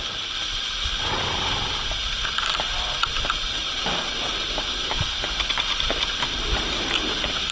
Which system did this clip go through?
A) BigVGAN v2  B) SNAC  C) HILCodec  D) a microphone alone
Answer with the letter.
D